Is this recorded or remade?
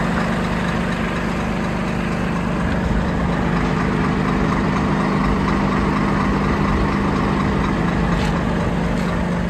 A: recorded